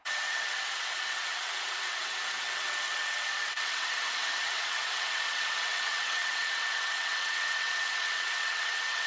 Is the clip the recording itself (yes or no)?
no